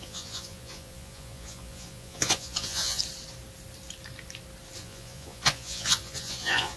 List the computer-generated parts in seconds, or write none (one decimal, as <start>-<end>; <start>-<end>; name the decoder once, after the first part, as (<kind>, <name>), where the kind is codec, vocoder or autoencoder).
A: 0.0-3.0 (vocoder, Vocos); 4.8-6.8